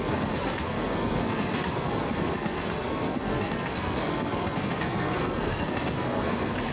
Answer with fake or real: fake